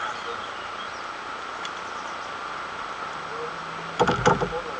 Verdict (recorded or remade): recorded